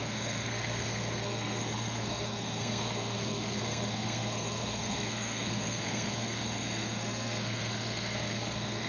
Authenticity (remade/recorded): remade